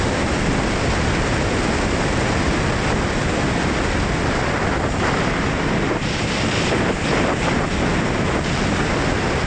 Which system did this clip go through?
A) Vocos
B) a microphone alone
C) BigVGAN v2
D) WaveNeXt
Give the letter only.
B